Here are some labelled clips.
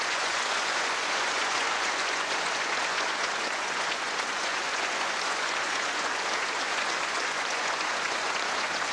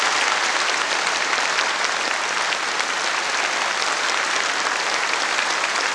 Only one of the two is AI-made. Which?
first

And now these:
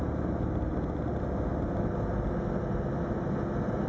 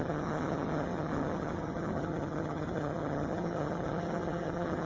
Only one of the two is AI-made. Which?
second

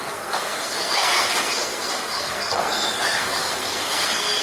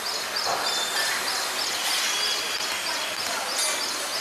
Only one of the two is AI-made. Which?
first